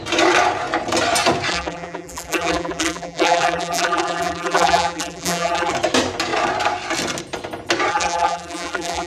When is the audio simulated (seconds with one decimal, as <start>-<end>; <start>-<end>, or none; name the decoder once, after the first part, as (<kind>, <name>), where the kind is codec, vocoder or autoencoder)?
1.5-5.7 (vocoder, BigVGAN v2); 7.9-9.1